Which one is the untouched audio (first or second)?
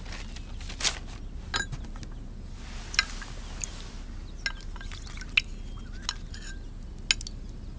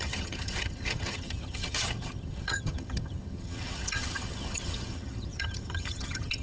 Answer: first